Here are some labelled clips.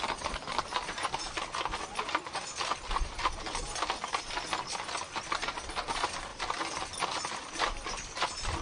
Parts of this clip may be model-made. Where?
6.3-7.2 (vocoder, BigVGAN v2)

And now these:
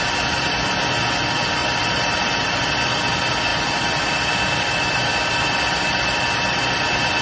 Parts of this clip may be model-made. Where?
1.6-2.7 (vocoder, BigVGAN v2)

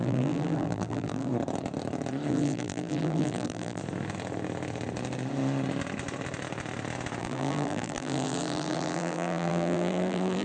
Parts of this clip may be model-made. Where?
0.0-1.3 (vocoder, BigVGAN v2); 2.3-3.8; 7.2-10.4